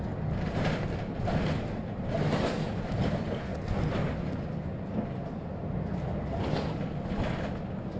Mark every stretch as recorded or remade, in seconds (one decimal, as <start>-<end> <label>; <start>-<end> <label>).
0.0-8.0 recorded